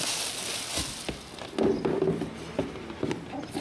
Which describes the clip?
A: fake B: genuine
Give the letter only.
B